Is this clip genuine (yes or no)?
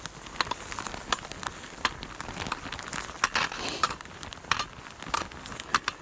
yes